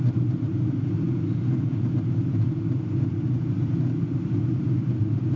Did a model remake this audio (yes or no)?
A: no